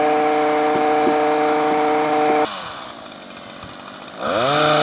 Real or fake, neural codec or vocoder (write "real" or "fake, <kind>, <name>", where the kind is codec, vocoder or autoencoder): real